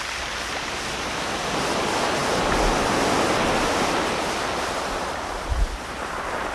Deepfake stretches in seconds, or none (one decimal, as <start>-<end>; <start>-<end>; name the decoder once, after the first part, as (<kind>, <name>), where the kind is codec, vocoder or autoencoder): none

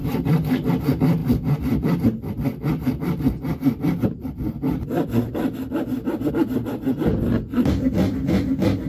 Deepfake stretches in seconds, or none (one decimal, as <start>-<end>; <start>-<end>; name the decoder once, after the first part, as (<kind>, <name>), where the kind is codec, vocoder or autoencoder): none

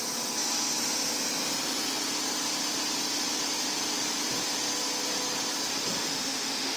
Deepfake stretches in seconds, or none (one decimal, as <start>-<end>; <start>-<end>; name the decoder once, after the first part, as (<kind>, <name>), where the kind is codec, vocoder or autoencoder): 6.1-6.8 (autoencoder, DAC-VAE)